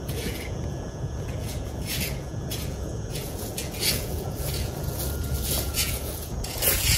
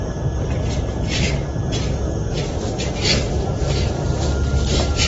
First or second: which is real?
second